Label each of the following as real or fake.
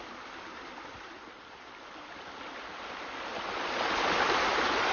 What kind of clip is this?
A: real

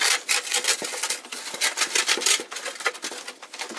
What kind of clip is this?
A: real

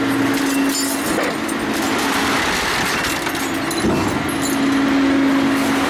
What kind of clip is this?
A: real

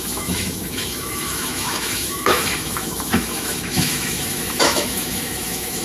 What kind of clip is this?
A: fake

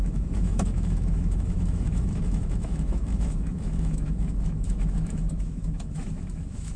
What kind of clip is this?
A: fake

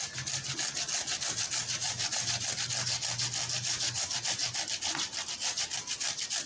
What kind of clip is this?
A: real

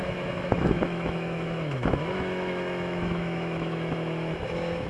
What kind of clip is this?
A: fake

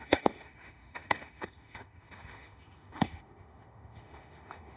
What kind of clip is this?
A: fake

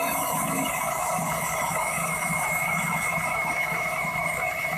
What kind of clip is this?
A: fake